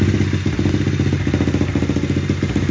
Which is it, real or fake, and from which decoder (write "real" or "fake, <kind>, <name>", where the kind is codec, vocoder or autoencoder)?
real